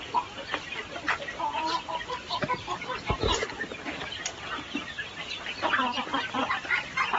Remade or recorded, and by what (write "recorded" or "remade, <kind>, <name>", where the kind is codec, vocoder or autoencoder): remade, vocoder, BigVGAN v2